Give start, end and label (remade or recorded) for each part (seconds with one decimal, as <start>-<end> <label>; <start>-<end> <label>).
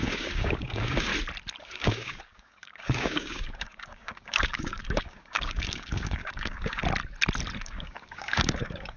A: 0.0-1.1 remade; 1.1-1.6 recorded; 1.6-6.8 remade; 6.8-7.6 recorded; 7.6-9.0 remade